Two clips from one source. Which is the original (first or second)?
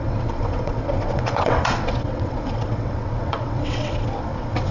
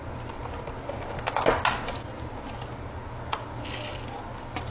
second